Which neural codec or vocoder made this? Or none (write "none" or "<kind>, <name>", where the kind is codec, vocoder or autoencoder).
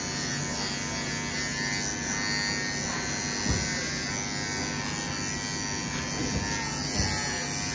none